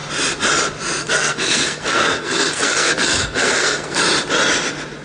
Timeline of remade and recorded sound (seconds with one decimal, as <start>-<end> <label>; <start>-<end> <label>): 0.0-1.0 recorded; 1.0-4.0 remade; 4.0-5.0 recorded

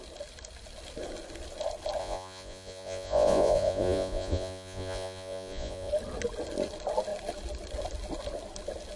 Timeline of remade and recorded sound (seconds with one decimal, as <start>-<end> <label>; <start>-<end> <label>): 0.0-2.0 recorded; 2.0-5.9 remade; 5.9-9.0 recorded

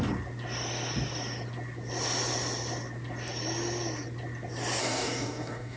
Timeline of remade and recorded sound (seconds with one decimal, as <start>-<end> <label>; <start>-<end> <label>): 0.0-4.8 recorded; 4.8-5.8 remade

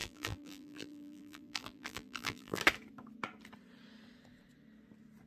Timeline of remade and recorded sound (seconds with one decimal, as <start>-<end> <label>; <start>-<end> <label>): 0.0-2.6 remade; 2.6-5.3 recorded

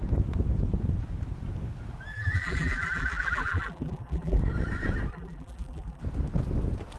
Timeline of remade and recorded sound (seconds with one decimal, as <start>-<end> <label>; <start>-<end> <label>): 0.0-2.1 recorded; 2.1-4.4 remade; 4.4-5.1 recorded; 5.1-6.0 remade; 6.0-7.0 recorded

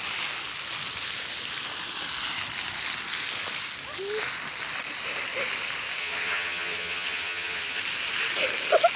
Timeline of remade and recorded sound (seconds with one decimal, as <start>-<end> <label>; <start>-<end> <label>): 0.0-6.0 recorded; 6.0-7.8 remade; 7.8-9.0 recorded